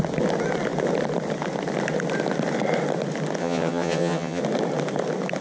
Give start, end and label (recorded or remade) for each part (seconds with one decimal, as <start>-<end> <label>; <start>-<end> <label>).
0.0-3.4 recorded; 3.4-4.4 remade; 4.4-5.4 recorded